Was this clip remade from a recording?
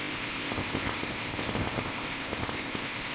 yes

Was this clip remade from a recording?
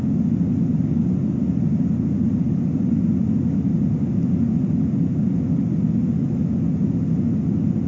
no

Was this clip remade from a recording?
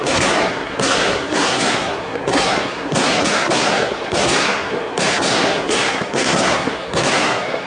yes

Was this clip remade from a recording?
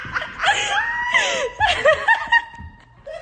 no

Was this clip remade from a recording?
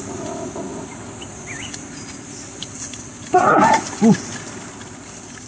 no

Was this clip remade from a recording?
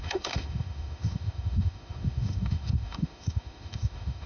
yes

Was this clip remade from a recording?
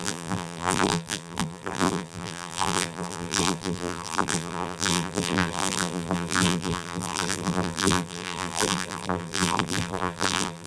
yes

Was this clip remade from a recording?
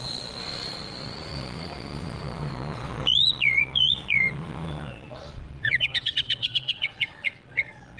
yes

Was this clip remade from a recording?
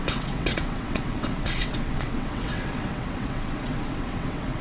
yes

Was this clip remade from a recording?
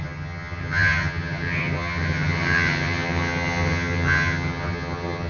yes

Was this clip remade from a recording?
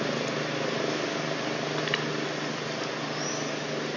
no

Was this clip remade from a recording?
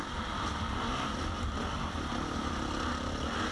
no